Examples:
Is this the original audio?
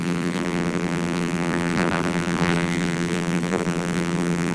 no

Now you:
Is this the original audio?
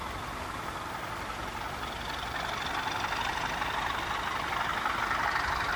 yes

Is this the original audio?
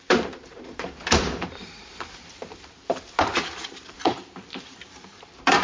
no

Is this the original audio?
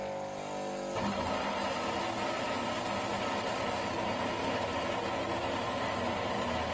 yes